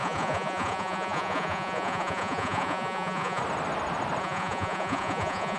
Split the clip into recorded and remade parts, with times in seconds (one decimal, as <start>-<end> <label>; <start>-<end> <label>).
0.0-3.4 remade; 3.4-4.2 recorded; 4.2-5.6 remade